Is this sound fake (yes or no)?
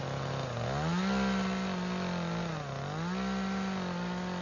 no